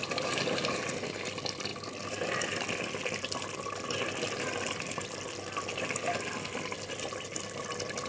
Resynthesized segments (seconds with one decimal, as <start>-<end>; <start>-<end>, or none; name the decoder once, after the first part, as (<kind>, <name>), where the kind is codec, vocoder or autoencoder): none